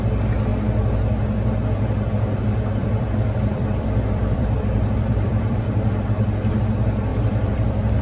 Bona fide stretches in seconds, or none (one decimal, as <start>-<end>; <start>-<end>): 0.0-2.8; 5.6-7.1